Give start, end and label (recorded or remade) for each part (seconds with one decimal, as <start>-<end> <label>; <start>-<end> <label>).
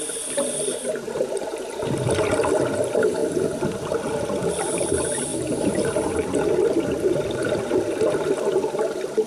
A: 0.0-3.2 remade; 3.2-4.1 recorded; 4.1-9.3 remade